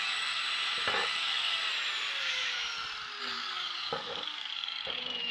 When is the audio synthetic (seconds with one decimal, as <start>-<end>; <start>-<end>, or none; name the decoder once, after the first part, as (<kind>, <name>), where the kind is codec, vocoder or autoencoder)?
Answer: 0.0-0.4 (codec, DAC); 0.9-1.6; 2.2-2.6; 3.2-5.3

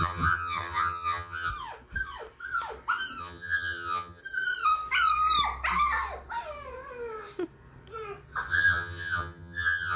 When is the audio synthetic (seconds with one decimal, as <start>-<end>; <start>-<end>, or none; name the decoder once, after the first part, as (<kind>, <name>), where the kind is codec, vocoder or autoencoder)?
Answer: 0.0-1.5 (vocoder, HiFi-GAN); 3.2-4.2; 8.5-10.0